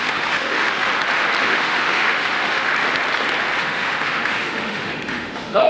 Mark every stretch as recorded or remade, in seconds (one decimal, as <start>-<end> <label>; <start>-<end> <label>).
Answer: 0.0-0.9 remade; 0.9-1.4 recorded; 1.4-2.7 remade; 2.7-3.6 recorded; 3.6-5.7 remade